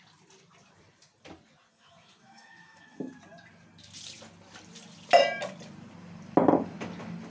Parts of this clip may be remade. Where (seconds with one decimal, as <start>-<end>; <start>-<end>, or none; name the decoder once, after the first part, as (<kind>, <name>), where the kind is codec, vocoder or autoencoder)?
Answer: 1.7-3.1 (autoencoder, DAC-VAE)